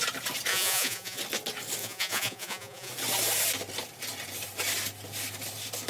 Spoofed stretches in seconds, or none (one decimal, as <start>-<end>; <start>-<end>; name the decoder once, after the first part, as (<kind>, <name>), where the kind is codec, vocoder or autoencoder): 0.5-1.2 (vocoder, Vocos); 1.8-2.9